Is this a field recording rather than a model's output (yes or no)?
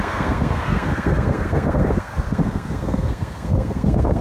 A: no